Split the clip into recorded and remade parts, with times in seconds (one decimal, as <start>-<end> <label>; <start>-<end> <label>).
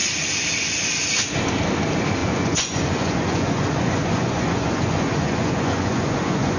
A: 0.0-2.2 recorded; 2.2-6.6 remade